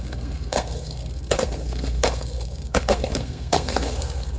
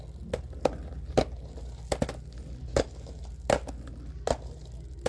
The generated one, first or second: first